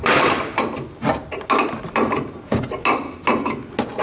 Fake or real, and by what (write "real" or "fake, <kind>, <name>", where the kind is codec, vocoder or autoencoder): real